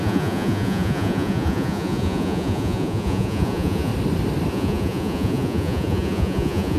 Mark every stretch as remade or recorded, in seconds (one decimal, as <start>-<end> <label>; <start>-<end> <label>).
0.0-3.9 remade; 3.9-4.5 recorded; 4.5-6.8 remade